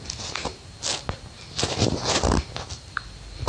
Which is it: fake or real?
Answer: real